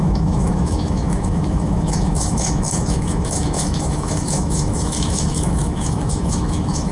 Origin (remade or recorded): remade